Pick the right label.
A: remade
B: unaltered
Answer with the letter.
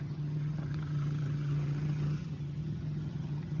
A